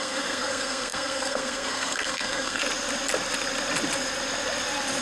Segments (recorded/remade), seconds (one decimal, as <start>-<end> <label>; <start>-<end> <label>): 0.0-2.6 remade; 2.6-5.0 recorded